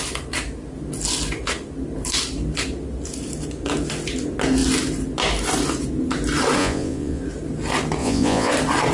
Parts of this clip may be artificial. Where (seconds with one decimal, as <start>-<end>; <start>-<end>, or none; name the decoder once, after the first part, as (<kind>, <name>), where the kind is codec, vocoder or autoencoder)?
6.6-7.2 (vocoder, Vocos); 8.0-8.5